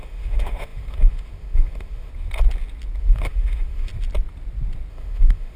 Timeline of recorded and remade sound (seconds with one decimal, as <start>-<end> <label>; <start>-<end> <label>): 0.0-2.1 remade; 2.1-3.0 recorded; 3.0-3.9 remade; 3.9-4.9 recorded; 4.9-5.6 remade